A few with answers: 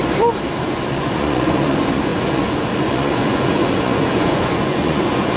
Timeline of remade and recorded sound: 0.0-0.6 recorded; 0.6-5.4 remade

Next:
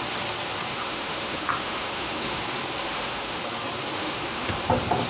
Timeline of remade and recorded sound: 0.0-0.7 recorded; 0.7-2.4 remade; 2.4-2.8 recorded; 2.8-3.4 remade; 3.4-4.0 recorded; 4.0-4.5 remade; 4.5-5.1 recorded

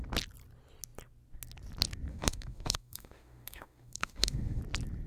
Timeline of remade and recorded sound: 0.0-2.1 recorded; 2.1-4.6 remade; 4.6-5.1 recorded

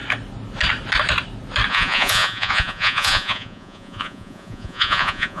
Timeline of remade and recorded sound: 0.0-1.7 recorded; 1.7-5.4 remade

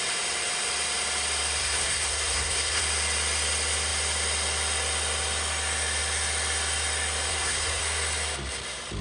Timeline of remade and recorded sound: 0.0-1.6 recorded; 1.6-2.8 remade; 2.8-7.3 recorded; 7.3-7.8 remade; 7.8-9.0 recorded